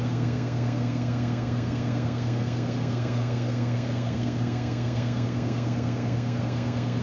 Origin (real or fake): fake